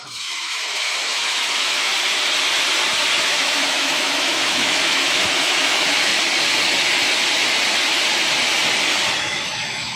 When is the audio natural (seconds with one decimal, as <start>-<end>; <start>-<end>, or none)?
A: 1.9-3.2; 6.1-9.2